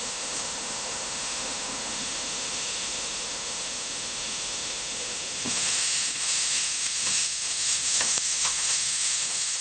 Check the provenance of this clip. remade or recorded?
remade